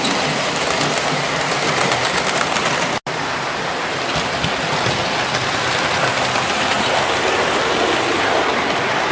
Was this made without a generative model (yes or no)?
yes